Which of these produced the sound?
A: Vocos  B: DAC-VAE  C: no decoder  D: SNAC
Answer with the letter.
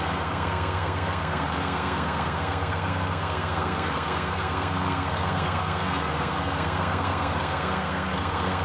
D